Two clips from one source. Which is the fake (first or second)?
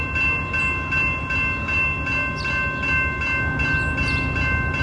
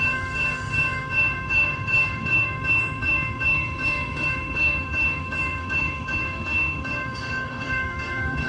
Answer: second